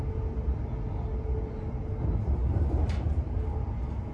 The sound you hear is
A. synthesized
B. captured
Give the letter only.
B